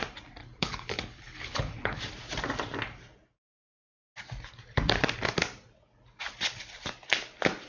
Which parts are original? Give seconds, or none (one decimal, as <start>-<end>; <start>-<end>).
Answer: 0.0-0.4; 2.0-7.7